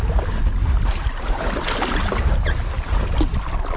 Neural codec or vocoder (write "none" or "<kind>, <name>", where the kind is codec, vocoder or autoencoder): none